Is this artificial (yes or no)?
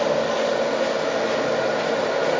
no